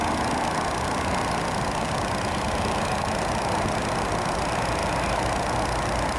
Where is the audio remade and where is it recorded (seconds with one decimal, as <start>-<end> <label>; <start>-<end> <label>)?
0.0-6.2 recorded